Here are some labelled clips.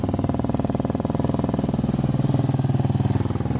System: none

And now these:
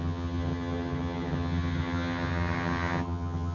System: vocoder, HiFi-GAN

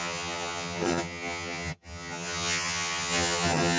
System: vocoder, HiFi-GAN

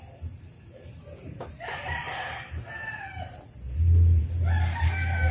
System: none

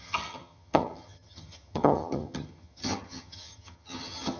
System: vocoder, HiFi-GAN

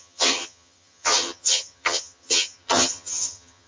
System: vocoder, HiFi-GAN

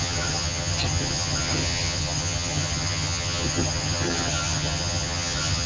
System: vocoder, HiFi-GAN